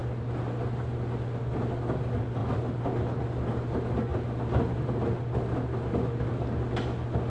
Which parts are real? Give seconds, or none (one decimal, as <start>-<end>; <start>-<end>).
0.0-7.3